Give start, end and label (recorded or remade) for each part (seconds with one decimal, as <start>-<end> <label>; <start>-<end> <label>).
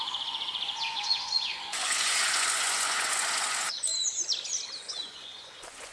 0.0-3.9 remade; 3.9-4.8 recorded; 4.8-5.9 remade